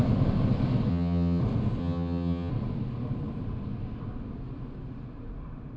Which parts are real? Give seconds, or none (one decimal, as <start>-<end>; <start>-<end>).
0.0-0.9; 1.4-1.8; 2.5-5.8